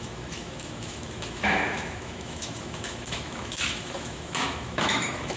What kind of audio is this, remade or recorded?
remade